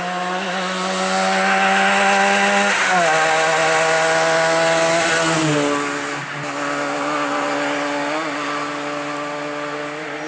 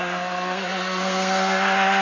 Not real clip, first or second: second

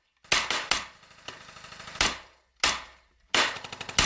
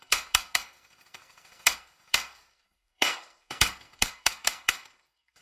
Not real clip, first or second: second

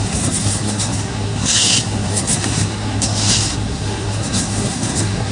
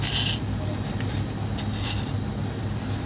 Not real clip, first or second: first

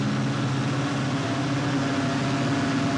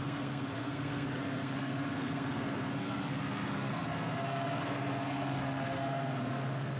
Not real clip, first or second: second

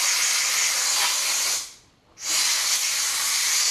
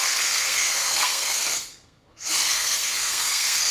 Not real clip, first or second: second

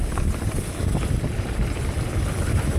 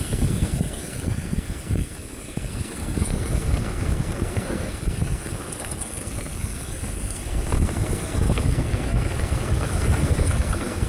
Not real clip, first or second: second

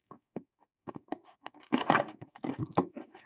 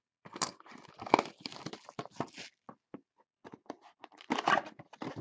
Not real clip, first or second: first